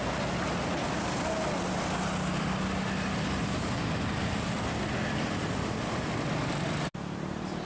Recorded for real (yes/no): yes